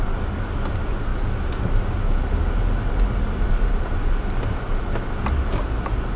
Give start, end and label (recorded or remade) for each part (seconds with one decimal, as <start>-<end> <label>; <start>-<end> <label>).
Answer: 0.0-6.2 recorded